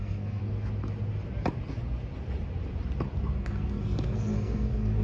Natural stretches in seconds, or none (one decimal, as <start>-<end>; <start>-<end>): 0.4-3.4